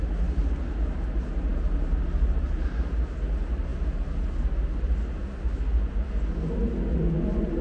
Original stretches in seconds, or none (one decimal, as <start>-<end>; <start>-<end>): 0.0-7.6